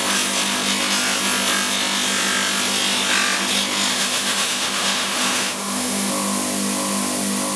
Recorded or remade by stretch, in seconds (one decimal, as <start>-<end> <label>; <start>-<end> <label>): 0.0-3.9 recorded; 3.9-6.1 remade; 6.1-7.6 recorded